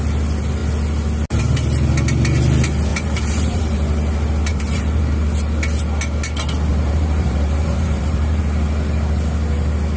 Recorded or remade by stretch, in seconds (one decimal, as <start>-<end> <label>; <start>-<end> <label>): 0.0-2.9 recorded; 2.9-3.6 remade; 3.6-4.5 recorded; 4.5-5.0 remade; 5.0-6.7 recorded; 6.7-8.4 remade; 8.4-10.0 recorded